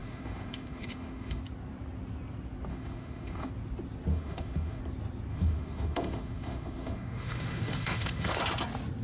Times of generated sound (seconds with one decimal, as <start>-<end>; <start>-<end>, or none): 0.0-1.4; 2.7-3.5; 4.1-4.8; 5.3-8.4